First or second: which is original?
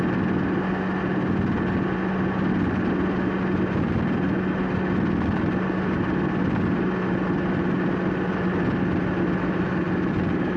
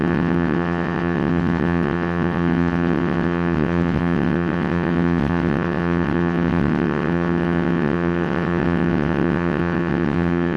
first